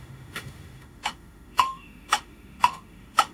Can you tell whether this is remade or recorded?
remade